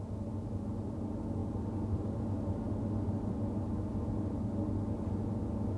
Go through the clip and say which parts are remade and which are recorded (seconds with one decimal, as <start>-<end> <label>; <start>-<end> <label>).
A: 0.0-5.8 recorded